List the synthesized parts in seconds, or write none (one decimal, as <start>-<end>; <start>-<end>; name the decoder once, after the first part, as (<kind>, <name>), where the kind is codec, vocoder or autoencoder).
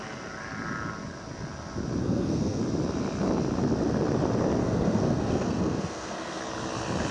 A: 2.0-2.6 (codec, SNAC); 4.6-6.4